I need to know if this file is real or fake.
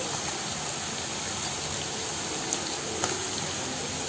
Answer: real